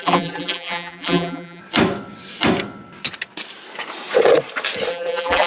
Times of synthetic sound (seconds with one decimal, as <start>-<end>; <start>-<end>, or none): 0.0-1.6; 4.9-5.5